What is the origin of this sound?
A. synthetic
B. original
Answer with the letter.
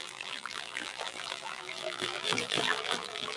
A